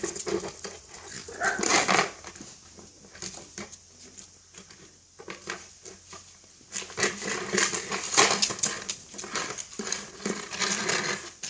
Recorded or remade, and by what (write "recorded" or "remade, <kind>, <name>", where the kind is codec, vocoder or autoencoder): recorded